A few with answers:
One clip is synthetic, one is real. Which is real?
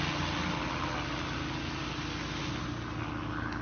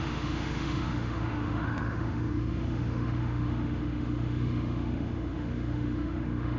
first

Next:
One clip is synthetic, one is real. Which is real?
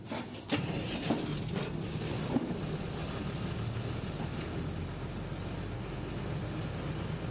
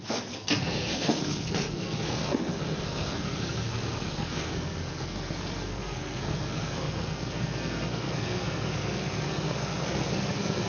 first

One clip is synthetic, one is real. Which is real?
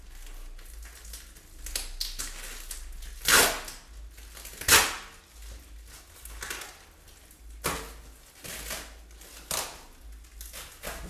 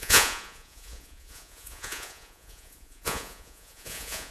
first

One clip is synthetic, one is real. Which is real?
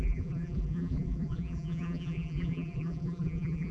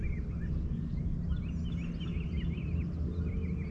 second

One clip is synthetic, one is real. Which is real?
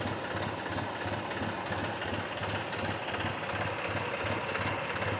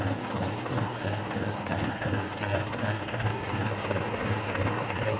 first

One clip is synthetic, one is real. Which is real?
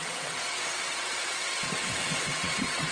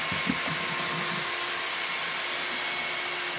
second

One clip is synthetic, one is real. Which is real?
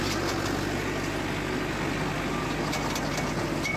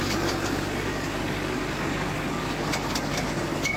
first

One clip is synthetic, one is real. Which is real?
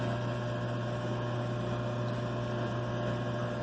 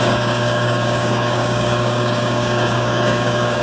first